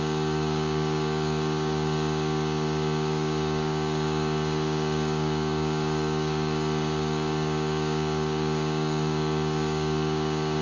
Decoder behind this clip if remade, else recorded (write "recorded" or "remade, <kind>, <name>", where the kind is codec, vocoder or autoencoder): remade, codec, DAC